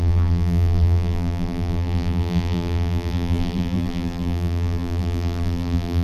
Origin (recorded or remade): remade